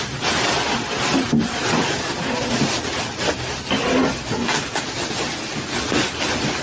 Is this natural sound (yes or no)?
yes